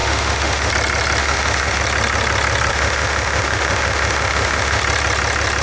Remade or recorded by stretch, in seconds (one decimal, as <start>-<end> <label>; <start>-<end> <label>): 0.0-0.7 remade; 0.7-1.2 recorded; 1.2-1.8 remade; 1.8-2.7 recorded; 2.7-4.8 remade; 4.8-5.6 recorded